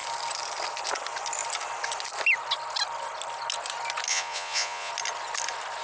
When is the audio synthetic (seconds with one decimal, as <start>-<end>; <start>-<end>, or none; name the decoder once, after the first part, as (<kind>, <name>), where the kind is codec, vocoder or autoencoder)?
4.1-4.9 (vocoder, Vocos)